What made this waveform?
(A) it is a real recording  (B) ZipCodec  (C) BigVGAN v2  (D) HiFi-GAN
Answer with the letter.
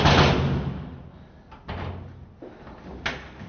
A